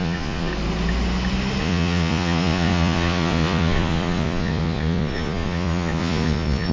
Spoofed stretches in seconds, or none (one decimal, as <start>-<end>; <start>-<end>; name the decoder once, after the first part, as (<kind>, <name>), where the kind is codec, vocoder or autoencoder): 0.0-0.5 (vocoder, Vocos); 1.6-6.7